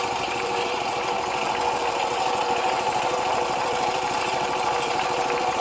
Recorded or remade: remade